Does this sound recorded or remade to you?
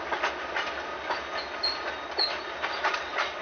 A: recorded